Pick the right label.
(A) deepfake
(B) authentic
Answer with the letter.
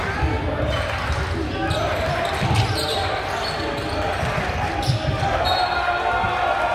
B